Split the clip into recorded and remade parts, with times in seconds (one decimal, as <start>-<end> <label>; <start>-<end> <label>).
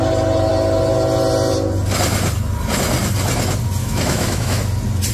0.0-3.8 recorded; 3.8-4.6 remade; 4.6-5.1 recorded